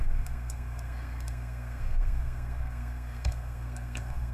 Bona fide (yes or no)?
no